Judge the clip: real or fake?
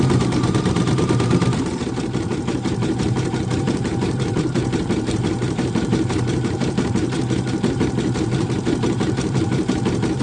fake